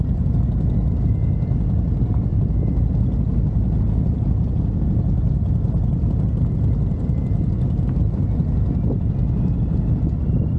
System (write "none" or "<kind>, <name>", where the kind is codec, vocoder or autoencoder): vocoder, BigVGAN v2